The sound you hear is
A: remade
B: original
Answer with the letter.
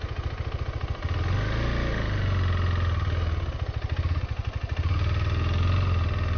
B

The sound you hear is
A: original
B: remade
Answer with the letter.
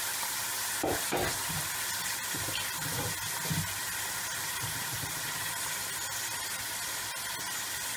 A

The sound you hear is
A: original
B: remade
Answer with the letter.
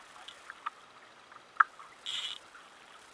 A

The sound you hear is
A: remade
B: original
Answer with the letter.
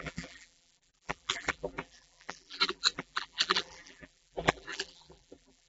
A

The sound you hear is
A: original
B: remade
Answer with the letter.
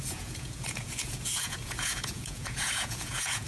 B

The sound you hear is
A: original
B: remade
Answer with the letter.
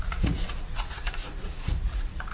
B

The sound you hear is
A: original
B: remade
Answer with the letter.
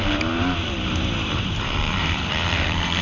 B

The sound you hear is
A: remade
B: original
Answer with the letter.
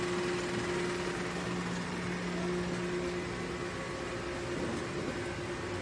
B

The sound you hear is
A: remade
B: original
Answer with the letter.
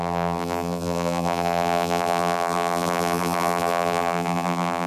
A